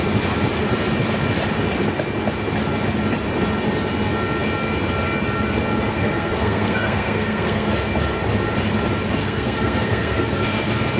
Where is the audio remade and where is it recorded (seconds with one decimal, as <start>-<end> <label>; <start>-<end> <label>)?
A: 0.0-5.9 recorded; 5.9-7.7 remade; 7.7-9.2 recorded; 9.2-10.4 remade; 10.4-11.0 recorded